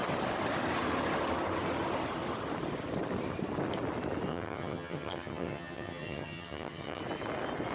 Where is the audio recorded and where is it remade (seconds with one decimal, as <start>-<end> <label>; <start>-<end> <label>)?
0.0-4.3 recorded; 4.3-7.0 remade; 7.0-7.7 recorded